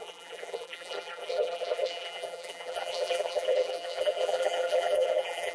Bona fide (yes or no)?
no